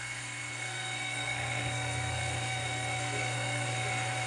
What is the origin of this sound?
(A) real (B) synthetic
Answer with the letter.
B